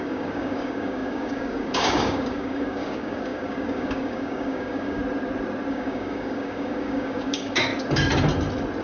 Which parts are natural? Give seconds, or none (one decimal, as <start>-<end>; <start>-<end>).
5.0-5.7; 7.7-8.8